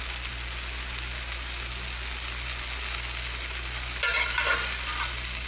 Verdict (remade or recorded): recorded